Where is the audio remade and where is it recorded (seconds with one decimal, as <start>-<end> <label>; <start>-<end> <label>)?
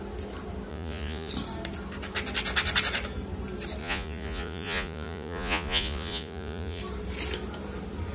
0.0-0.7 recorded; 0.7-1.3 remade; 1.3-3.8 recorded; 3.8-6.8 remade; 6.8-8.1 recorded